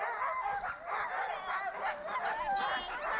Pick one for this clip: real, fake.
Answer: real